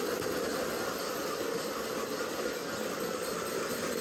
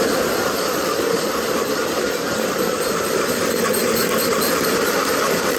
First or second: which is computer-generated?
second